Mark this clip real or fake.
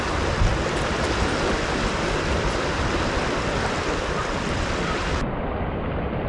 real